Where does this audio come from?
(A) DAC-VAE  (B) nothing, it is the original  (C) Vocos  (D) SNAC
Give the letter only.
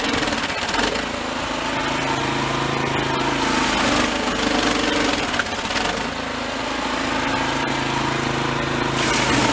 B